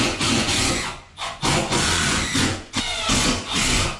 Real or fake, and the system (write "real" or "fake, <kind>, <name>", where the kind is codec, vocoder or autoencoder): fake, vocoder, Vocos